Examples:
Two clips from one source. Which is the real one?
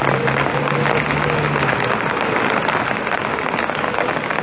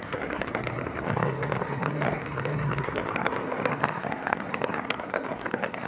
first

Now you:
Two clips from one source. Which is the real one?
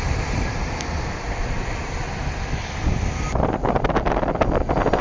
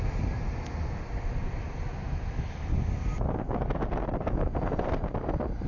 second